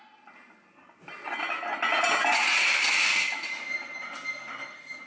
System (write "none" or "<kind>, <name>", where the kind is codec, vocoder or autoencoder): none